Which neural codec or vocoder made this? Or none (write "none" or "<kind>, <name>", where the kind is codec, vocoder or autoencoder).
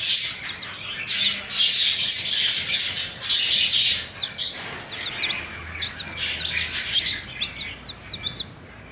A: none